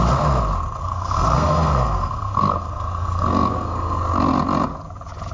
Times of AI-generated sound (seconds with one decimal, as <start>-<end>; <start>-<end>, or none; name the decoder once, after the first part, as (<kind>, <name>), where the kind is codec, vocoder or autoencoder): 0.8-4.0 (codec, SNAC)